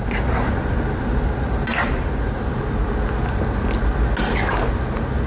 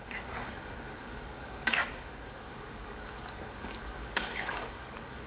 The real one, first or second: first